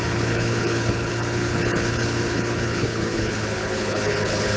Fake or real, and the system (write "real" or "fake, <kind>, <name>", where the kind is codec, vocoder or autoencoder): fake, codec, HILCodec